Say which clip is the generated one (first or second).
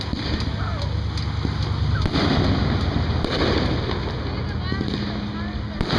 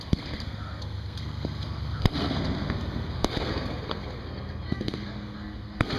second